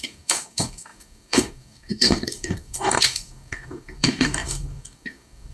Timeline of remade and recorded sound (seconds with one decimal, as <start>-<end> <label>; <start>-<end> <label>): 0.0-5.5 remade